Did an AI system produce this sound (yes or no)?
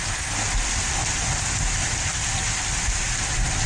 no